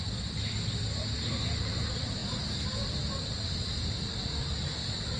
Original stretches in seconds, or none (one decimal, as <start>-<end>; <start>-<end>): 0.0-5.2